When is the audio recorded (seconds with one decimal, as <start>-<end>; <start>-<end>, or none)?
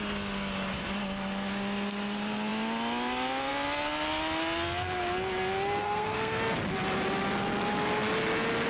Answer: 0.0-5.8; 6.4-8.7